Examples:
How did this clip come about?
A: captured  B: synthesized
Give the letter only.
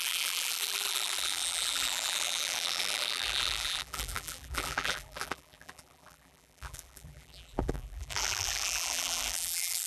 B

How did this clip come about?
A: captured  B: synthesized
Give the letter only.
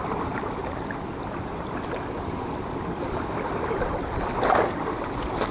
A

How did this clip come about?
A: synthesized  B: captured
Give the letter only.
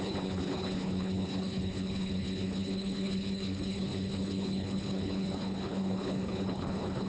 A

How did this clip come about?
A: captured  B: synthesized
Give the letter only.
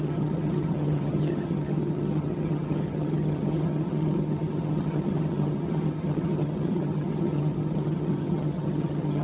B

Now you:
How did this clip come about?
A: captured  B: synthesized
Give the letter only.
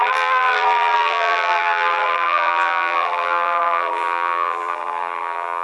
B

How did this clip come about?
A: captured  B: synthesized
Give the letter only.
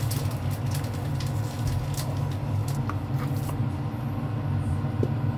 A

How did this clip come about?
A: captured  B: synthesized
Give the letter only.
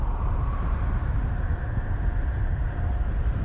A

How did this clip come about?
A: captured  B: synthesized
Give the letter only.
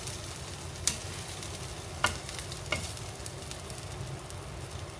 A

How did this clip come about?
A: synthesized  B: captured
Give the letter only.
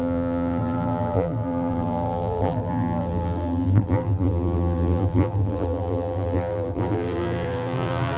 A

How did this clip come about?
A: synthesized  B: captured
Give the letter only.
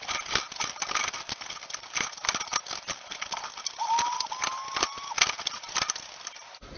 B